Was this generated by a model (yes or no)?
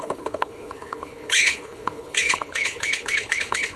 yes